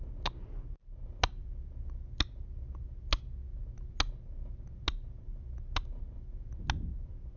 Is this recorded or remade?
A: recorded